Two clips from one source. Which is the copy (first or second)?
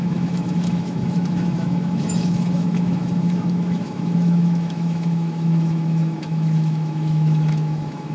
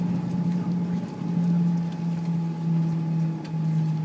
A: first